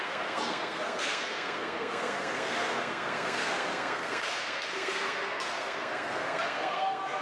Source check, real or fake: fake